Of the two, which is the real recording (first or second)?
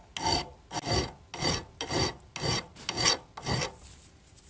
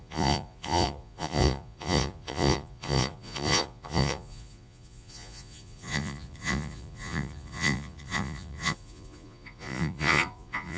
first